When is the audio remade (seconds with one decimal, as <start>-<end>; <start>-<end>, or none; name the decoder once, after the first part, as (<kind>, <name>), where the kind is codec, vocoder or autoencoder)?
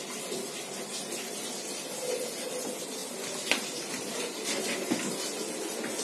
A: none